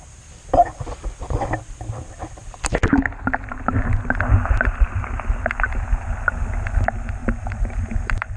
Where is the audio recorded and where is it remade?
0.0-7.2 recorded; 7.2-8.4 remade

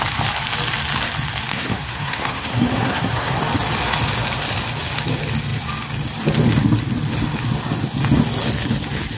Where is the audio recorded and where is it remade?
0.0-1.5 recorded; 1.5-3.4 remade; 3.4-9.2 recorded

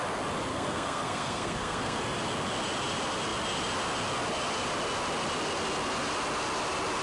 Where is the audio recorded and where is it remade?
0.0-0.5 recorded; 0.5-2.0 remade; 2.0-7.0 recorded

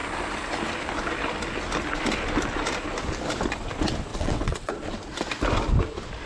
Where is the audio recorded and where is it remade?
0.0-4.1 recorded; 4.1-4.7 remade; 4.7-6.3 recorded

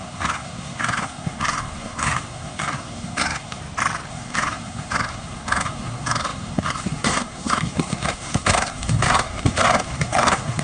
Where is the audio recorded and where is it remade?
0.0-3.6 remade; 3.6-4.1 recorded; 4.1-10.6 remade